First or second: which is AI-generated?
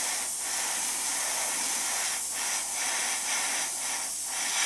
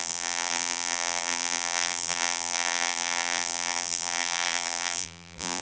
second